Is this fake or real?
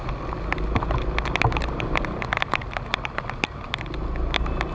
real